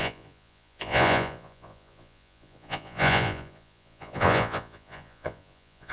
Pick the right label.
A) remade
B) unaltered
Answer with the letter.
A